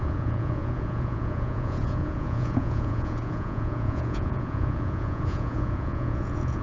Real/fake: fake